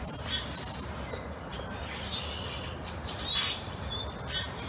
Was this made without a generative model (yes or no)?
no